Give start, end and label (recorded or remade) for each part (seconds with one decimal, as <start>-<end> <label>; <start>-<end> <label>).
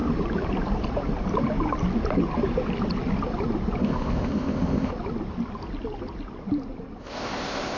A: 0.0-3.8 recorded; 3.8-4.9 remade; 4.9-7.0 recorded; 7.0-7.8 remade